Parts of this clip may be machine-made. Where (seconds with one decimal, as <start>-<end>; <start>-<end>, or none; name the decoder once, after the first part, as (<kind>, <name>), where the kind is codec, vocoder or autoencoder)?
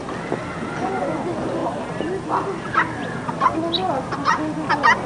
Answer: none